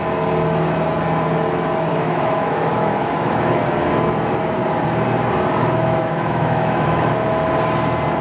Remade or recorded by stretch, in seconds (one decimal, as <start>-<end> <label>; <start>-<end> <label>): 0.0-1.9 recorded; 1.9-3.6 remade; 3.6-5.6 recorded; 5.6-7.1 remade; 7.1-8.2 recorded